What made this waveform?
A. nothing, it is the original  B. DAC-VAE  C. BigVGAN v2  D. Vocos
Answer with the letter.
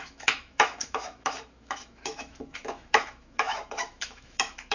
B